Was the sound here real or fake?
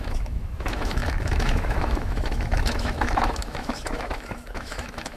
fake